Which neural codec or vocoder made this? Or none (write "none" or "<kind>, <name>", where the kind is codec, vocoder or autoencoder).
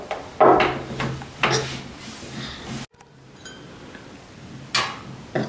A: none